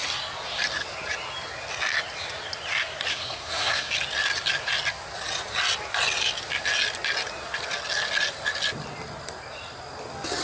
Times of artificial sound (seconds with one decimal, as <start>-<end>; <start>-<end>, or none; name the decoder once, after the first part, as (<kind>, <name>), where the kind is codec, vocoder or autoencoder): 3.1-3.9 (codec, SNAC)